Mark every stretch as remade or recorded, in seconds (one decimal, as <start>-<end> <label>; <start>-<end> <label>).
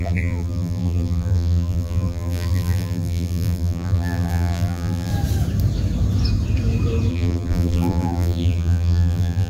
0.0-5.1 remade; 5.1-7.1 recorded; 7.1-9.5 remade